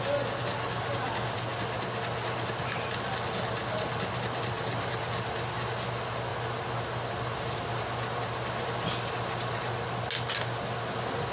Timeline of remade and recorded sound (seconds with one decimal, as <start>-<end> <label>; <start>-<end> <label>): 0.0-11.3 recorded